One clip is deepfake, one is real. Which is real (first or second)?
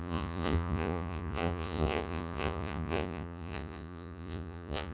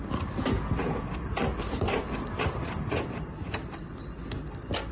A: second